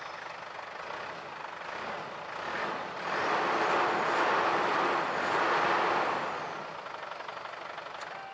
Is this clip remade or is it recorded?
recorded